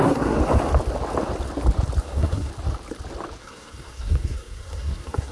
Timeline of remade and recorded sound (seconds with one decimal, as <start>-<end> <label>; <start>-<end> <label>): 0.0-0.4 remade; 0.4-2.0 recorded; 2.0-2.5 remade; 2.5-3.4 recorded; 3.4-5.3 remade